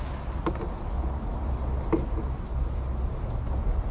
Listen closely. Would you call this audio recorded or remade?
recorded